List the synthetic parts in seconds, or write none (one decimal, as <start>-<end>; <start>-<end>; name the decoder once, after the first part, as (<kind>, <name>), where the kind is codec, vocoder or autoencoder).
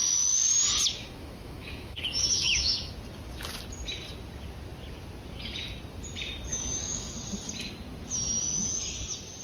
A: 0.9-2.9 (autoencoder, DAC-VAE); 6.5-7.1